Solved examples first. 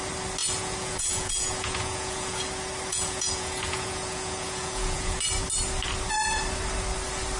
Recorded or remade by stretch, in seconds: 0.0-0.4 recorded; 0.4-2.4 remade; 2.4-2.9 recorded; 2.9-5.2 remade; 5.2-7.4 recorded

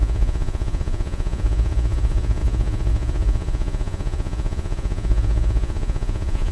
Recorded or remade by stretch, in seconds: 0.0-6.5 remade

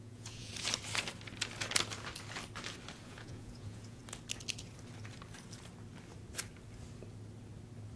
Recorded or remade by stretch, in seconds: 0.0-0.5 remade; 0.5-3.0 recorded; 3.0-4.0 remade; 4.0-8.0 recorded

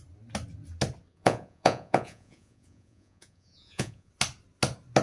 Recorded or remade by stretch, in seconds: 0.0-1.1 recorded; 1.1-4.1 remade; 4.1-5.0 recorded